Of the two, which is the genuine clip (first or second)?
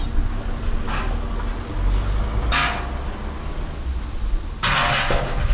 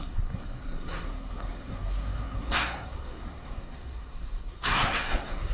first